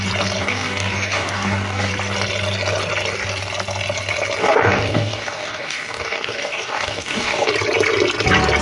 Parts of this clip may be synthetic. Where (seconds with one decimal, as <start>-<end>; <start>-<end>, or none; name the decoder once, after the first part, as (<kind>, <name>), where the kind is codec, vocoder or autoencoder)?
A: 0.4-1.9 (codec, DAC); 4.4-7.5